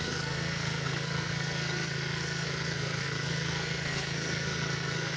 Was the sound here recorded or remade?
remade